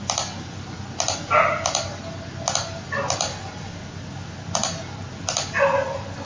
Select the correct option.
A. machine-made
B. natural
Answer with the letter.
B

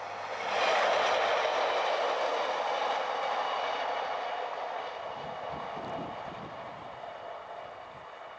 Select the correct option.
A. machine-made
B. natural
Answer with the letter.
B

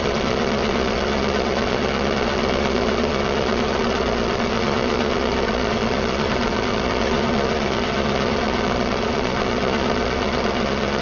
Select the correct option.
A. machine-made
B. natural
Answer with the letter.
A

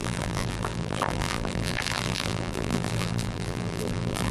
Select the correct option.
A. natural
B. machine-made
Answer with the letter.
B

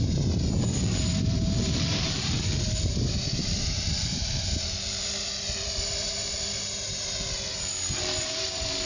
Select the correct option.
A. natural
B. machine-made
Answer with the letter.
B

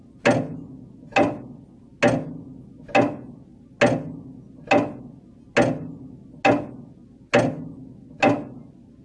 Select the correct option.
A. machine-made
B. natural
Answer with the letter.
B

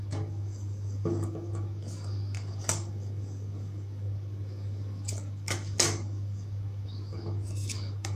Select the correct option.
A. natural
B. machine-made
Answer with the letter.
B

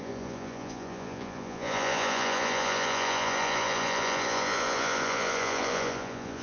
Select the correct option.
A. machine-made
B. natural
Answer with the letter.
A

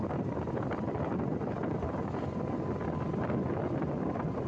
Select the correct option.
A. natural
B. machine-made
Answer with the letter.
A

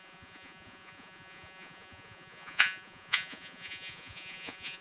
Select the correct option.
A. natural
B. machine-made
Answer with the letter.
B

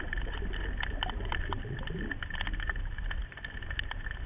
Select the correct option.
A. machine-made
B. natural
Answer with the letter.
B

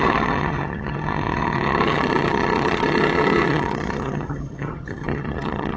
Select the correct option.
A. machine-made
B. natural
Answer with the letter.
A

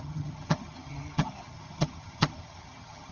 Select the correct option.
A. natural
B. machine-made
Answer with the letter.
B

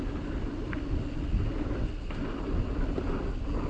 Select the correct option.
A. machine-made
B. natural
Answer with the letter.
B